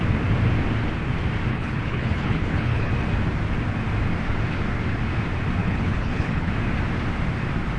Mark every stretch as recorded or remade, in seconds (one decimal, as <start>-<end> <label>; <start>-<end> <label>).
0.0-1.5 recorded; 1.5-2.9 remade; 2.9-5.6 recorded; 5.6-6.5 remade; 6.5-7.8 recorded